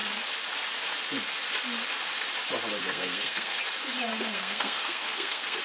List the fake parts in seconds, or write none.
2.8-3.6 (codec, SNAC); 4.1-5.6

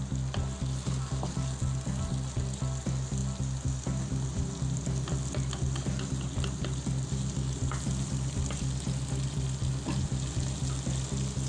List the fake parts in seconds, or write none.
none

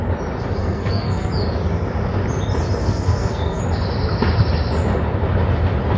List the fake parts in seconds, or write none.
0.6-1.3 (codec, SNAC); 2.8-3.6

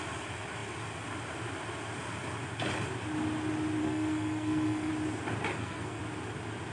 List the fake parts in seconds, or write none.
3.8-4.9 (codec, SNAC); 5.5-6.0

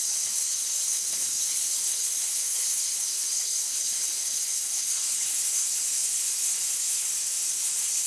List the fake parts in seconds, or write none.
0.0-8.1 (codec, HILCodec)

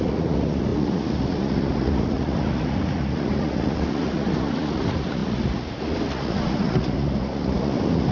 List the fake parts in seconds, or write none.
0.0-8.1 (vocoder, Vocos)